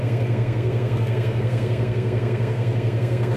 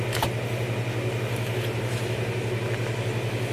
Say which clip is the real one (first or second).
second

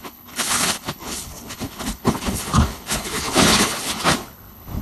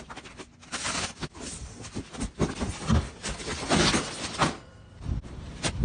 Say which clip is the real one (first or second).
second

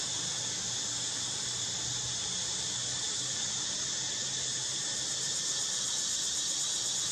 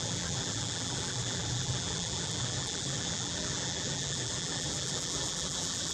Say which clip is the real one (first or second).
first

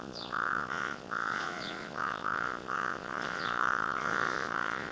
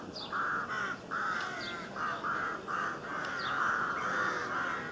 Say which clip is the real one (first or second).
second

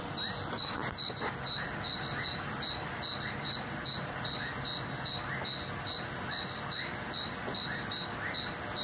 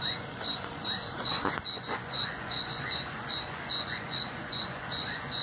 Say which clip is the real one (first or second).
first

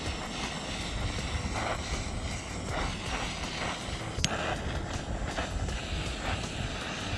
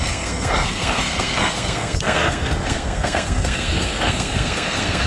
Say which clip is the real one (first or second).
first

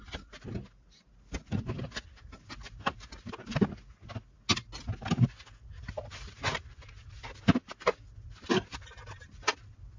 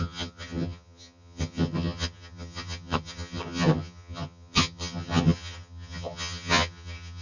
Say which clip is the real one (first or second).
first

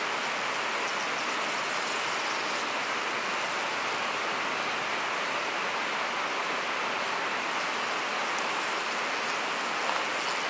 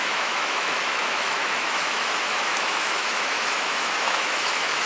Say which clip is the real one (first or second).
first